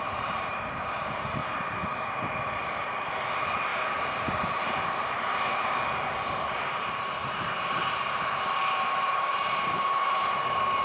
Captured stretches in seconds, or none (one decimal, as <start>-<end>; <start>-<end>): 1.4-2.5